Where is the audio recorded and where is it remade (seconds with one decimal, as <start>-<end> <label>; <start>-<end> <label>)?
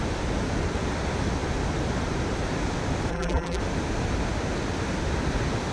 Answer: 0.0-3.1 recorded; 3.1-3.6 remade; 3.6-5.7 recorded